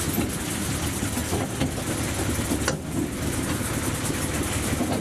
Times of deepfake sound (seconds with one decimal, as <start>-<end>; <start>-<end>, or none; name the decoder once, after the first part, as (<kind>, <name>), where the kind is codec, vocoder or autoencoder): none